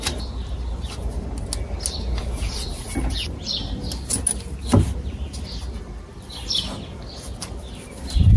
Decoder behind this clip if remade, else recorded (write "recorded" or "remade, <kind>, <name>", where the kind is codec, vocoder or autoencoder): recorded